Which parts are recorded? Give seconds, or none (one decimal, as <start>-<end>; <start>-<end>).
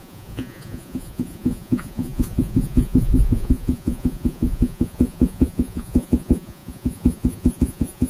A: none